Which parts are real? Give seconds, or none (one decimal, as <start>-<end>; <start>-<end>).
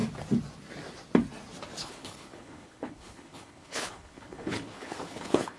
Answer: 0.0-1.8